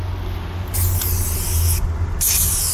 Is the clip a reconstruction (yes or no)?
no